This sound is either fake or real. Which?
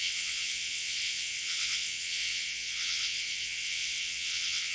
fake